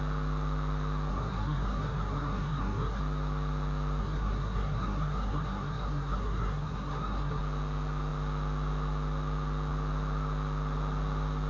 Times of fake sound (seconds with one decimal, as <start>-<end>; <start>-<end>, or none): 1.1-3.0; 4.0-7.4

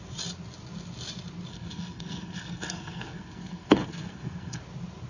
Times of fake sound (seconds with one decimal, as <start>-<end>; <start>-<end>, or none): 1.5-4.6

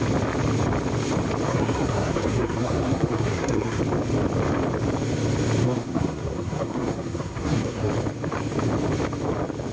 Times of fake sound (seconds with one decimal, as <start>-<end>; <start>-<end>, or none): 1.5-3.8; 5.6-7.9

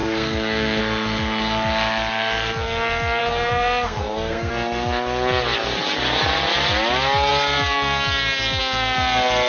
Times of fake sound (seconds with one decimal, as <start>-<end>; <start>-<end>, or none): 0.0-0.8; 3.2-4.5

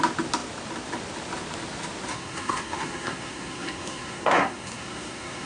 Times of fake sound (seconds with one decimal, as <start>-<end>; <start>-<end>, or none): 2.1-5.5

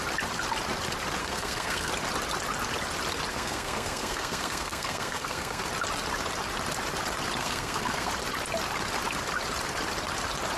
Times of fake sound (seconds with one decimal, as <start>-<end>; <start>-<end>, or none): 1.2-1.9; 3.3-5.6; 7.4-8.1

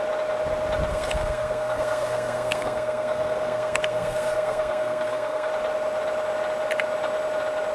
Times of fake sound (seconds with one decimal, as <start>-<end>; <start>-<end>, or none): 0.9-5.5

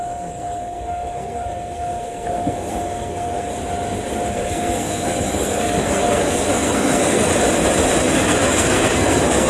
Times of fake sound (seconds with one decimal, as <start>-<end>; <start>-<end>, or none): 0.0-3.5; 4.3-7.3; 8.0-9.5